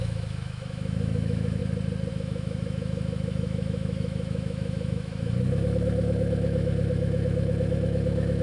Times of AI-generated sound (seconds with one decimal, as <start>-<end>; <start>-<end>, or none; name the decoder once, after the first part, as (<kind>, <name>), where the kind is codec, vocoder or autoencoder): 0.0-1.6 (autoencoder, DAC-VAE); 2.1-8.4